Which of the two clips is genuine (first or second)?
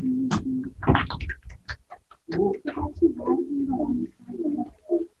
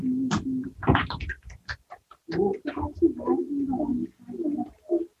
first